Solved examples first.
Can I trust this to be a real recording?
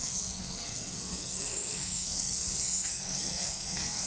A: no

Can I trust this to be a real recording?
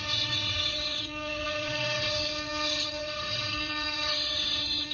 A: no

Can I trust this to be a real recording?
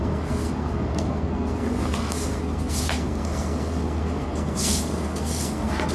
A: no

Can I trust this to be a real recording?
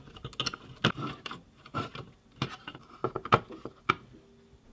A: yes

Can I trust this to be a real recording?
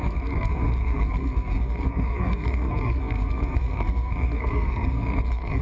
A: no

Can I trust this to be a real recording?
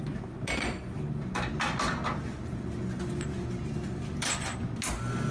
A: yes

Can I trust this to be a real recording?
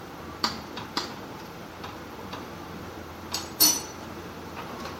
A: no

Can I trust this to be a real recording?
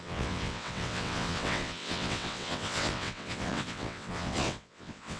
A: no